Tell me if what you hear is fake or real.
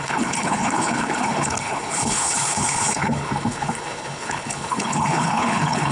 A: fake